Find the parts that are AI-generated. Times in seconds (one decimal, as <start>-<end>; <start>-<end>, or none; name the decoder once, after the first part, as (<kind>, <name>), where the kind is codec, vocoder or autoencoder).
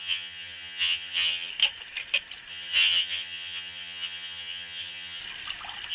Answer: 0.0-1.5 (vocoder, HiFi-GAN); 2.5-5.2